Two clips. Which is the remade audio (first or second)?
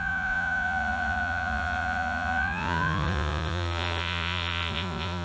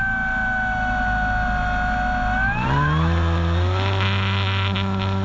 first